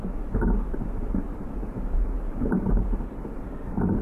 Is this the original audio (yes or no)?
no